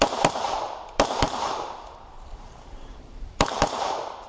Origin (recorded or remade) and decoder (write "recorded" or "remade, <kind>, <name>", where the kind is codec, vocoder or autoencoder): remade, vocoder, BigVGAN v2